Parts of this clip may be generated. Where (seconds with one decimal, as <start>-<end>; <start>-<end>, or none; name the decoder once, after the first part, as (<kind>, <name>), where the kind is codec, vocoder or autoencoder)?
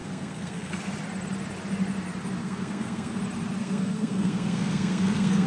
0.0-0.8 (codec, SNAC); 2.4-3.2; 3.6-5.5